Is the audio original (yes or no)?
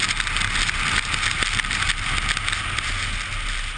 yes